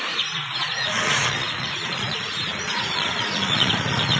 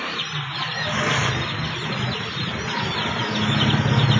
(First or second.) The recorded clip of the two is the second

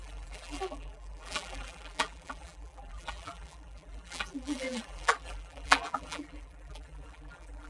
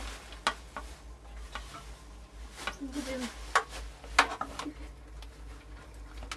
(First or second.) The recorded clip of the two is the second